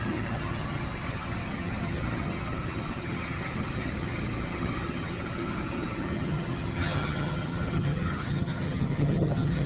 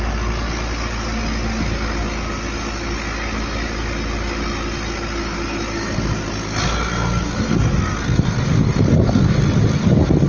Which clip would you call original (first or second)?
second